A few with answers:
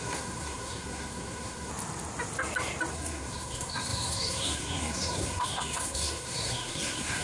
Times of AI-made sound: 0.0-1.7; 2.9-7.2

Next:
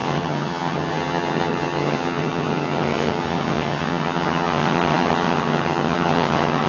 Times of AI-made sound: 0.0-6.7